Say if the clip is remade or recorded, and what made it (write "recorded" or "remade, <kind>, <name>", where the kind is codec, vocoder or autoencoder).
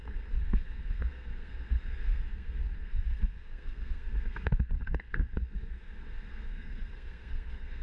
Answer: remade, codec, SNAC